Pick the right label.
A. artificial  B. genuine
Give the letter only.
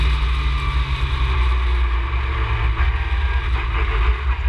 B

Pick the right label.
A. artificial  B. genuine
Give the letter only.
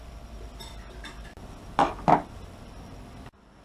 B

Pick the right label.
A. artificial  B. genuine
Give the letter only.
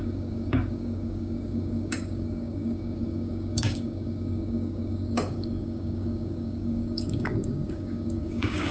A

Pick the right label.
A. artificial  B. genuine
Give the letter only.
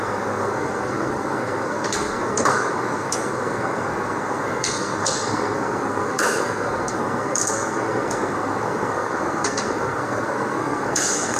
A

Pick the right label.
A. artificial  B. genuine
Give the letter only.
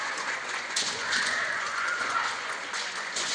A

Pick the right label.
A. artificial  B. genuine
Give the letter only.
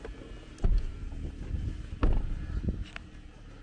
B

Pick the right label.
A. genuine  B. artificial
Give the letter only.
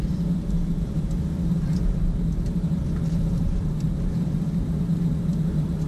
B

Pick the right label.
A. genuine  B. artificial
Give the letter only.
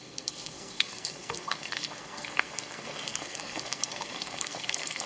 B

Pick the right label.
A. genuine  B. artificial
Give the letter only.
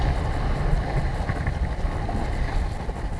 A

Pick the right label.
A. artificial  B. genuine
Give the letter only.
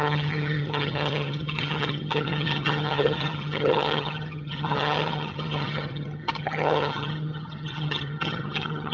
A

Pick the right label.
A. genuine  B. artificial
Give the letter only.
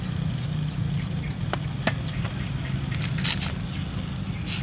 A